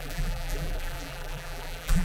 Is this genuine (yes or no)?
no